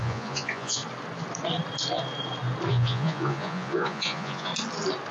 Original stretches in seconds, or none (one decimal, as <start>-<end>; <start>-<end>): 0.8-2.7; 4.5-5.1